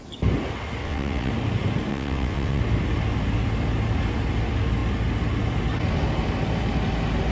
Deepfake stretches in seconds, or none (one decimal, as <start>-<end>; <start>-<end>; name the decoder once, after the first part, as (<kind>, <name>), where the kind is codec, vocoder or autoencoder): 0.8-1.3 (vocoder, WaveNeXt); 1.9-2.6